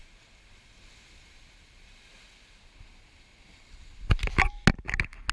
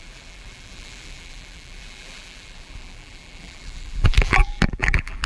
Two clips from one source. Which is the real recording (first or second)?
first